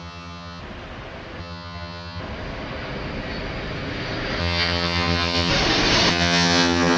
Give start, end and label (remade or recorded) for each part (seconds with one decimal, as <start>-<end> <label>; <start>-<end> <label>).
0.0-0.6 remade; 0.6-1.4 recorded; 1.4-2.2 remade; 2.2-4.4 recorded; 4.4-5.5 remade; 5.5-6.1 recorded; 6.1-7.0 remade